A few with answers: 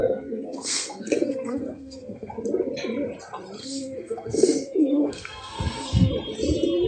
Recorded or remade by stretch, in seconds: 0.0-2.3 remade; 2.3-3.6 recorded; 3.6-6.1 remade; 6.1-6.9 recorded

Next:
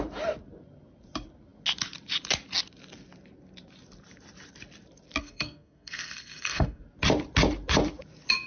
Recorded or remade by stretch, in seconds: 0.0-5.2 recorded; 5.2-6.8 remade; 6.8-8.5 recorded

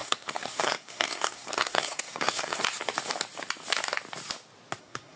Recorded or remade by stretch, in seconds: 0.0-2.6 remade; 2.6-4.8 recorded; 4.8-5.2 remade